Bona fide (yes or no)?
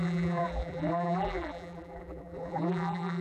no